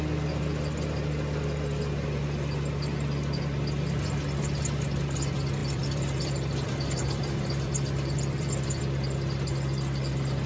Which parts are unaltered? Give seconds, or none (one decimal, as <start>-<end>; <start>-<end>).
0.0-5.6; 8.8-10.5

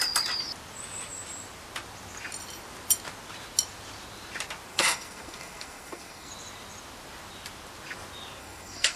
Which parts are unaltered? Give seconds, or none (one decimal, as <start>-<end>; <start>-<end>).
0.0-4.7; 6.3-8.4

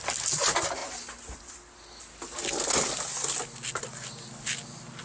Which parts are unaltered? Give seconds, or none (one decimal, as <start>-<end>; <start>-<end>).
0.0-5.0